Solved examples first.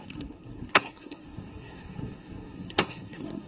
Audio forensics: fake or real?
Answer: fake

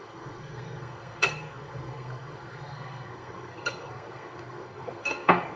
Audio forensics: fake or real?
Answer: fake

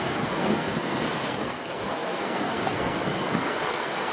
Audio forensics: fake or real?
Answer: fake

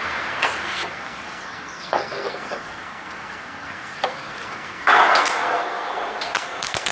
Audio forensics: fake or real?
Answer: fake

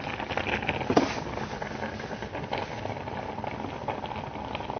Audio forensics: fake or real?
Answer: real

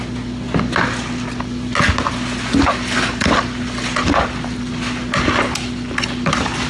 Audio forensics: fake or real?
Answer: real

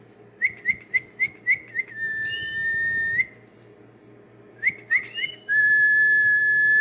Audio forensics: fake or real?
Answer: real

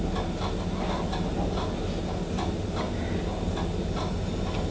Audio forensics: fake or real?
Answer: real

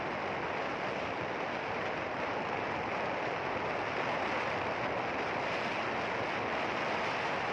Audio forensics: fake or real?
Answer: real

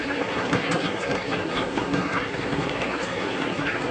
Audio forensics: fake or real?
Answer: fake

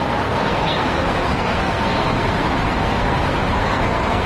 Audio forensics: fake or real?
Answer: fake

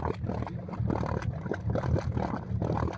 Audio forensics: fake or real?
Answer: real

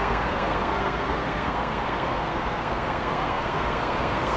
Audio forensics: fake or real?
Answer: fake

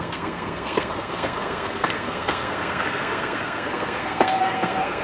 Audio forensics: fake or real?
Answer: fake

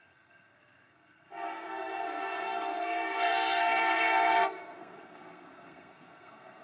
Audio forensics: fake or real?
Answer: fake